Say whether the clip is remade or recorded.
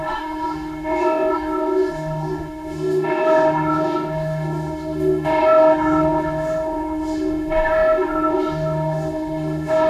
remade